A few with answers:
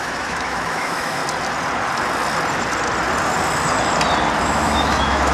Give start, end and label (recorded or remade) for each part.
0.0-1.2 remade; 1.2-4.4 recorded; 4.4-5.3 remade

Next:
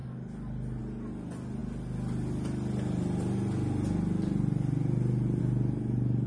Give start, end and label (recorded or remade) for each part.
0.0-6.3 recorded

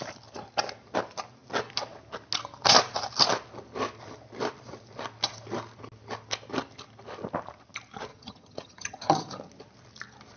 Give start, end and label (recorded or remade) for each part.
0.0-8.1 recorded; 8.1-9.2 remade; 9.2-10.4 recorded

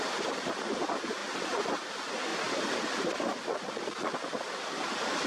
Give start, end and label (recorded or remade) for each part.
0.0-5.3 recorded